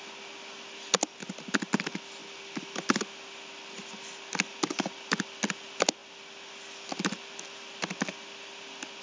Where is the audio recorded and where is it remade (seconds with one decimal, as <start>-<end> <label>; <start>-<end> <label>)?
0.0-9.0 recorded